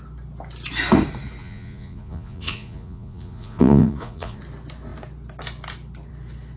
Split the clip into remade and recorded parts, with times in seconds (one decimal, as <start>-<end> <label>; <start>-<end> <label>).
0.0-1.4 recorded; 1.4-4.4 remade; 4.4-6.6 recorded